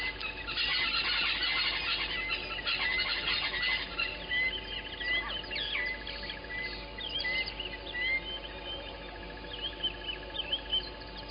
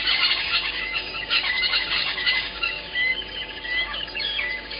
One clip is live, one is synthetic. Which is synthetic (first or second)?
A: second